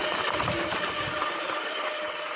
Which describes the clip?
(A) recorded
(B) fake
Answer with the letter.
A